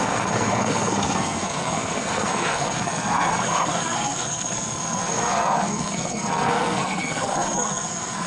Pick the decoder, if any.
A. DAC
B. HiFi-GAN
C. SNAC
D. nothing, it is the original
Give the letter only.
C